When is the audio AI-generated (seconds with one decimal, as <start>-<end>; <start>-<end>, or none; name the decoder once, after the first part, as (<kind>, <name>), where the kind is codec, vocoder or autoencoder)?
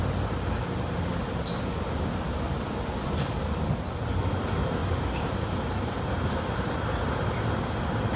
4.8-5.9 (vocoder, BigVGAN v2)